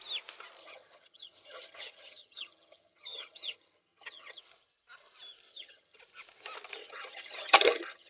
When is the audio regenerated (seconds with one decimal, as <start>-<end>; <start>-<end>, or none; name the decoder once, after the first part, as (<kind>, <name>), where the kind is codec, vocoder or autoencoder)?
0.6-4.4 (vocoder, HiFi-GAN); 5.5-6.0; 6.8-8.1